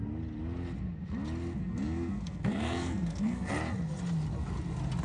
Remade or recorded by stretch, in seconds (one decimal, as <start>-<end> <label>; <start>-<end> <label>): 0.0-1.6 recorded; 1.6-3.5 remade; 3.5-5.0 recorded